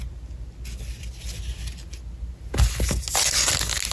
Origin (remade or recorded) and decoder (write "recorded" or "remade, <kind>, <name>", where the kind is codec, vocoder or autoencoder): recorded